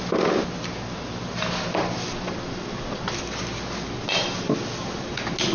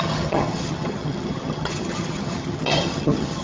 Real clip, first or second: first